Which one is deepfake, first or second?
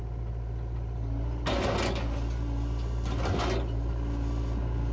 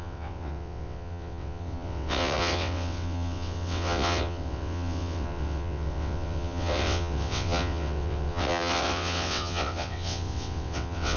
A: second